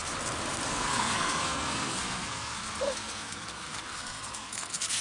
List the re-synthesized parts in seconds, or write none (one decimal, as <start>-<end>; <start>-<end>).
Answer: 0.7-5.0